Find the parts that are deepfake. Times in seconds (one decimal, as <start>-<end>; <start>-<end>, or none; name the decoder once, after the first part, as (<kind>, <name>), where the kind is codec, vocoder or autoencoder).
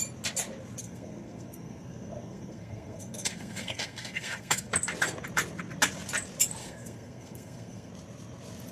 0.8-4.7 (codec, SNAC); 6.6-7.9